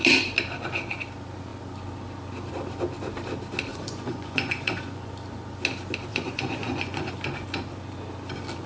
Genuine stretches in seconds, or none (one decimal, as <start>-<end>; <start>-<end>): 0.0-3.7; 5.1-6.1; 7.1-8.7